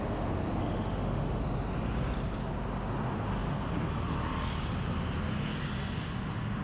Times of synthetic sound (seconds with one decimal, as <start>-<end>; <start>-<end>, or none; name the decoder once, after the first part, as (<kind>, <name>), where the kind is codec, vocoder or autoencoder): 0.6-1.4 (autoencoder, DAC-VAE)